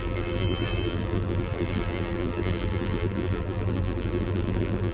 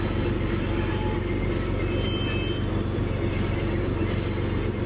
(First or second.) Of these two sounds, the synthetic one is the first